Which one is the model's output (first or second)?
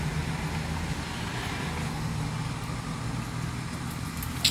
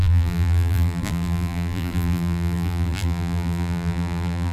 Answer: second